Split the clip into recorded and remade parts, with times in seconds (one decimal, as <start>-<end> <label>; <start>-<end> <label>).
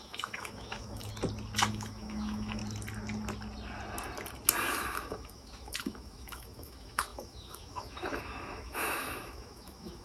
0.0-1.1 remade; 1.1-1.7 recorded; 1.7-2.6 remade; 2.6-4.7 recorded; 4.7-10.0 remade